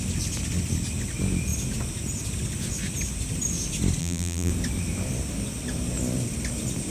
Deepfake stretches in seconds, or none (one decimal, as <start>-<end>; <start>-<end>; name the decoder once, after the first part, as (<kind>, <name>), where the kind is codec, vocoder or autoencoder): 4.0-4.5 (vocoder, BigVGAN v2)